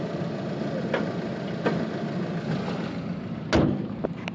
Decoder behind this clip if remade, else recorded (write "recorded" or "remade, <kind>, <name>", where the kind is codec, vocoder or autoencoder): recorded